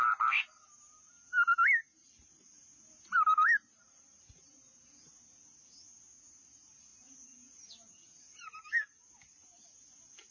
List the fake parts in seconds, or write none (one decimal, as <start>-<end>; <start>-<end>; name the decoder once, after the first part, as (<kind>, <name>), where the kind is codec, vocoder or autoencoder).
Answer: 0.0-0.7 (vocoder, BigVGAN v2); 2.0-5.1